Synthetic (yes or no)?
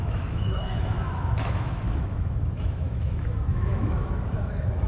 yes